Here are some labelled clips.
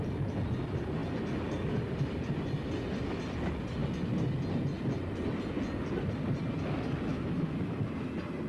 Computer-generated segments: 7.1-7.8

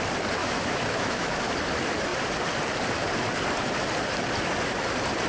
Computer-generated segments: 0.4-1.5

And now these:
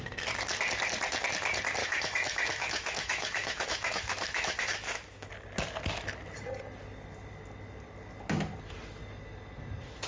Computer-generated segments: 1.8-5.3

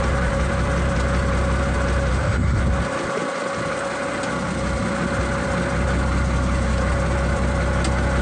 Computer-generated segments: 2.1-2.6

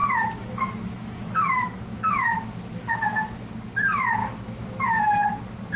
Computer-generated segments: 0.0-3.5; 4.2-5.0